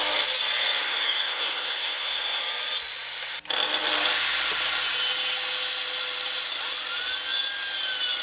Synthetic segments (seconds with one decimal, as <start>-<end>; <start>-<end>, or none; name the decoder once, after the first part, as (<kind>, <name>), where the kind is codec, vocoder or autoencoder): 0.8-2.4 (codec, SNAC)